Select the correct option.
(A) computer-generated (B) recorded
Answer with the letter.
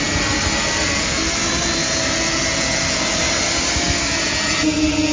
B